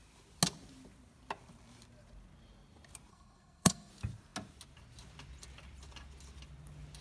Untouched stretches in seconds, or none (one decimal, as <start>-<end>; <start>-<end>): 0.0-3.1; 3.9-7.0